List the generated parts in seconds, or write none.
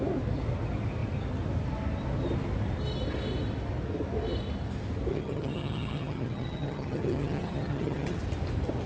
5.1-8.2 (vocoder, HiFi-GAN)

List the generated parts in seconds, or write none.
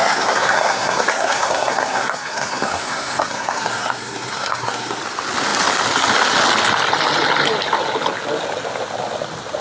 0.0-5.0 (codec, SNAC)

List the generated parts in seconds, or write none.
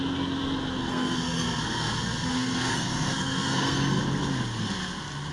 0.8-4.0 (codec, SNAC)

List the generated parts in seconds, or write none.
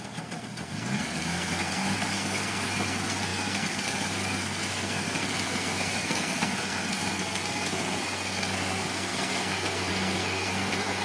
0.0-11.0 (codec, SNAC)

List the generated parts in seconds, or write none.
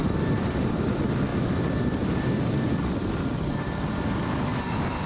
0.0-4.5 (vocoder, BigVGAN v2)